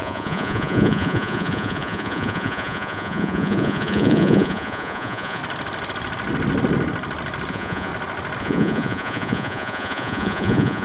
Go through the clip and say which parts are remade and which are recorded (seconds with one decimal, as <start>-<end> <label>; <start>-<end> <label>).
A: 0.0-5.4 remade; 5.4-7.5 recorded; 7.5-7.9 remade; 7.9-8.4 recorded; 8.4-10.8 remade